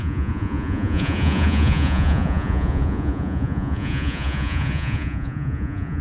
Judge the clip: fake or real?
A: fake